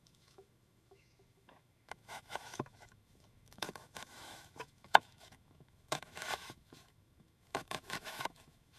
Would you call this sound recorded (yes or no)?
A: no